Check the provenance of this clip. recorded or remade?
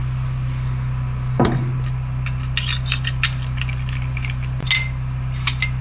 recorded